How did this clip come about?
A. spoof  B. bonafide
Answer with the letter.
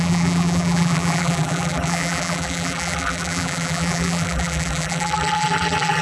A